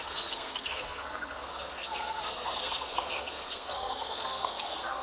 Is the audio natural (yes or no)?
no